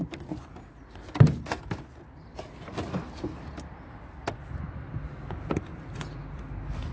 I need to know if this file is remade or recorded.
recorded